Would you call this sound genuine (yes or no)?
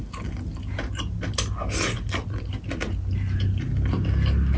yes